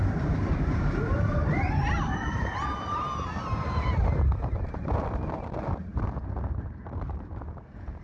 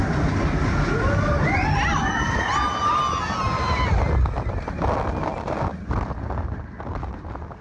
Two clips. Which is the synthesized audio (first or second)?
first